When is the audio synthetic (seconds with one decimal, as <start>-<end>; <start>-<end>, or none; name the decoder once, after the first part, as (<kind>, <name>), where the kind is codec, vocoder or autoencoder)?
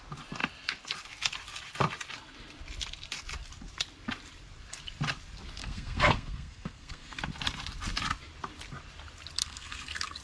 5.6-7.2 (codec, SNAC); 9.4-10.2